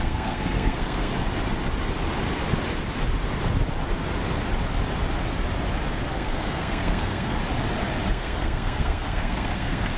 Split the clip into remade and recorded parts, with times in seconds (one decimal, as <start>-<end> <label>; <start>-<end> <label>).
0.0-1.1 remade; 1.1-6.1 recorded; 6.1-7.4 remade; 7.4-8.1 recorded; 8.1-10.0 remade